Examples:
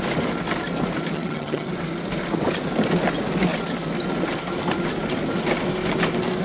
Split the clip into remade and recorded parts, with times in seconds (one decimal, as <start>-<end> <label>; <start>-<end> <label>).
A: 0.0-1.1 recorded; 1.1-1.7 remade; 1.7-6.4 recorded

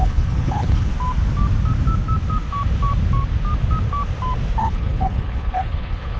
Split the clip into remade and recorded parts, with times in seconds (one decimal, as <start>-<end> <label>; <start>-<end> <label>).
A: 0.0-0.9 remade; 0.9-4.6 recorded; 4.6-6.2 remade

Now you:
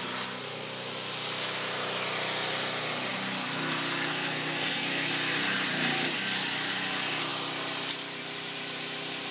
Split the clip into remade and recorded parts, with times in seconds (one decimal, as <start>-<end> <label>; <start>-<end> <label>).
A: 0.0-4.1 recorded; 4.1-5.1 remade; 5.1-9.3 recorded

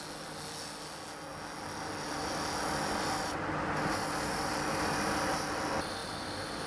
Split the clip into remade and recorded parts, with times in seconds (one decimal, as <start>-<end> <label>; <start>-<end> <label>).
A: 0.0-6.7 recorded

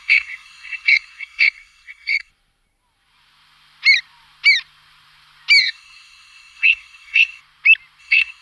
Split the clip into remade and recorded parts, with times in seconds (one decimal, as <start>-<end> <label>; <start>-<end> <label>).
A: 0.0-2.3 remade; 2.3-5.6 recorded; 5.6-7.4 remade; 7.4-8.0 recorded; 8.0-8.4 remade